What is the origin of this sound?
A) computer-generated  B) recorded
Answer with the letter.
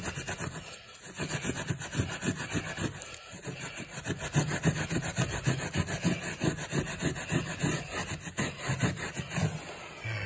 B